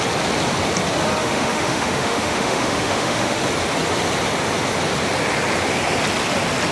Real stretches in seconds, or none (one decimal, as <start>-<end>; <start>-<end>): 0.0-1.2; 3.4-6.7